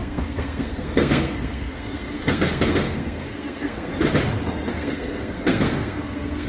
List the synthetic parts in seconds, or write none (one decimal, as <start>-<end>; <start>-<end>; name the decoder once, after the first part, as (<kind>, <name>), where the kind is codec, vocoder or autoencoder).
0.0-3.9 (codec, SNAC); 4.7-6.5

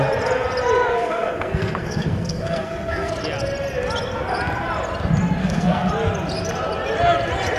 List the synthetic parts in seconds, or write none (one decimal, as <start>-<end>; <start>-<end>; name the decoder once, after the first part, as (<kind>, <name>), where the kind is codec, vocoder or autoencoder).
0.9-3.1 (codec, SNAC); 5.4-5.9

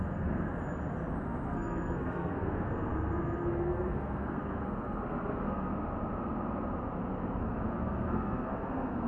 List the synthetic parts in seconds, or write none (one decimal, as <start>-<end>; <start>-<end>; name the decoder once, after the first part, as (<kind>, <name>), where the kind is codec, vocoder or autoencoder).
0.0-0.5 (codec, SNAC); 1.2-5.7; 7.4-9.1

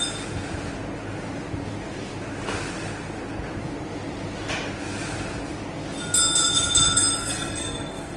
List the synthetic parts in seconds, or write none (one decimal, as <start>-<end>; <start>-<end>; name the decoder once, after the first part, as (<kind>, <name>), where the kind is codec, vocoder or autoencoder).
7.2-8.2 (codec, SNAC)

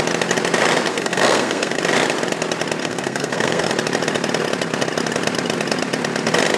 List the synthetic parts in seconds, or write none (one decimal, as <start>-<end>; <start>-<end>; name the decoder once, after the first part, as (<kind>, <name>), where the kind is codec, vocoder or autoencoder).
0.9-1.8 (codec, SNAC); 2.8-3.7

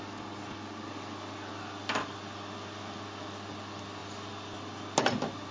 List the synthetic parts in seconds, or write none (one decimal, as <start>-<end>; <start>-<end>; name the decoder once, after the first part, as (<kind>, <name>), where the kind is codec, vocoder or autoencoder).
none